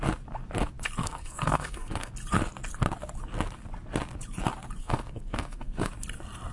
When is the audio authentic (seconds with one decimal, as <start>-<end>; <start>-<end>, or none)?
0.0-1.0; 2.1-4.8; 5.9-6.5